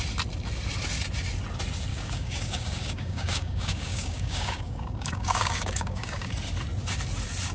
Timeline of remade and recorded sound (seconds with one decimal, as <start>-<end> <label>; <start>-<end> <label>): 0.0-1.9 recorded; 1.9-6.3 remade; 6.3-7.5 recorded